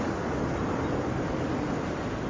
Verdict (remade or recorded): recorded